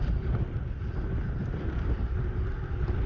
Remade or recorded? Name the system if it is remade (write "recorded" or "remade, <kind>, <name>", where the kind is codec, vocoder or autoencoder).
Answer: remade, vocoder, BigVGAN v2